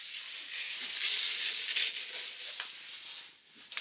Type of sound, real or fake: real